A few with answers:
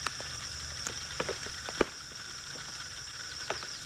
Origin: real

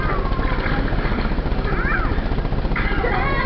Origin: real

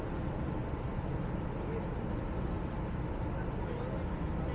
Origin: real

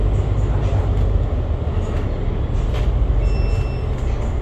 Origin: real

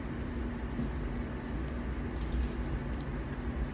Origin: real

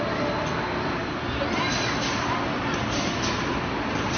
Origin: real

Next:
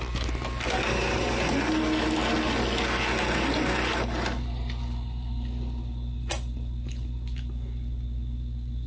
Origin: real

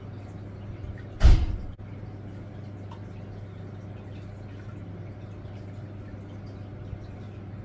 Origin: real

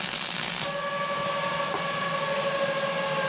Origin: real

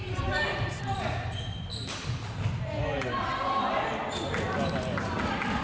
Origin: real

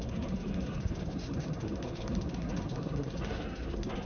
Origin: fake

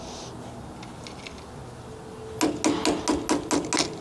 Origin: real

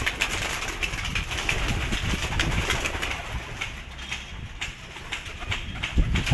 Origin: real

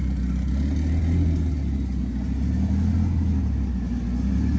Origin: real